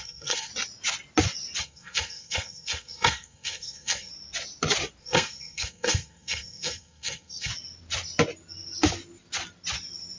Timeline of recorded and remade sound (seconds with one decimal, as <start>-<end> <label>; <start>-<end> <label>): 0.0-0.5 remade; 0.5-1.6 recorded; 1.6-4.1 remade; 4.1-5.0 recorded; 5.0-7.5 remade; 7.5-10.2 recorded